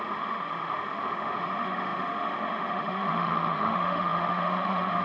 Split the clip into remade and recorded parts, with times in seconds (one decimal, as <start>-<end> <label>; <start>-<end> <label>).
0.0-5.0 remade